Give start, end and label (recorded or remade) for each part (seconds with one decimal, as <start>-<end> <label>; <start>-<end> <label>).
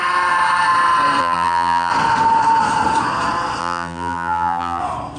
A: 0.0-1.2 recorded; 1.2-1.9 remade; 1.9-3.6 recorded; 3.6-4.8 remade; 4.8-5.2 recorded